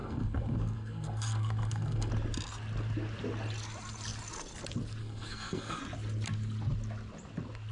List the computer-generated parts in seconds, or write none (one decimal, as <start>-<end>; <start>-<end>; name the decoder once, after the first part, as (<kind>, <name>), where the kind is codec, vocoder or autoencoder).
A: 0.0-2.1 (codec, SNAC); 5.0-5.8